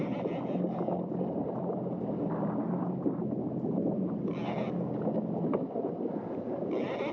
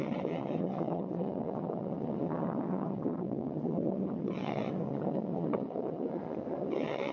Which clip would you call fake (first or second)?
second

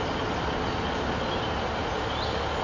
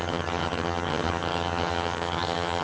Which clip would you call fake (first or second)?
second